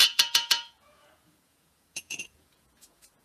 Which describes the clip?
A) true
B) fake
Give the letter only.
B